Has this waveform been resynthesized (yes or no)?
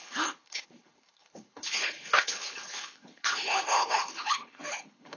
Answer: yes